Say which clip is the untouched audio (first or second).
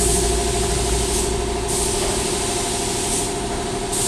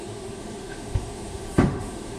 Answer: first